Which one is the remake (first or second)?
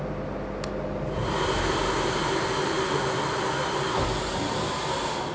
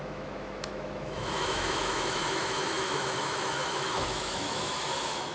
second